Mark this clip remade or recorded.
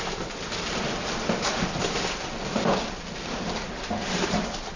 recorded